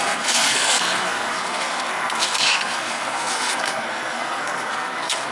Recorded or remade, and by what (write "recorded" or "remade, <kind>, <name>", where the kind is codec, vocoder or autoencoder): remade, codec, SNAC